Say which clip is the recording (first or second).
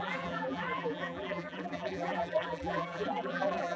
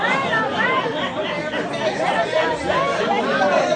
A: second